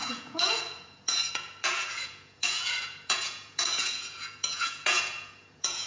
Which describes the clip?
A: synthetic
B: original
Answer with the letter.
A